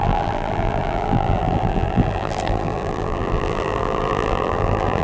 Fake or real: fake